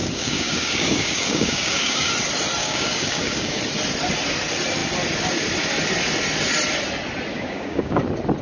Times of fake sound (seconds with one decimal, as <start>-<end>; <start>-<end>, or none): 0.0-2.1; 2.6-3.6; 7.3-8.0